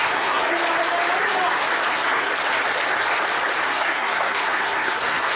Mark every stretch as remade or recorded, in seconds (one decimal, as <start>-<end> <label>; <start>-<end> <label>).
0.0-0.4 remade; 0.4-1.9 recorded; 1.9-2.3 remade; 2.3-3.7 recorded; 3.7-5.4 remade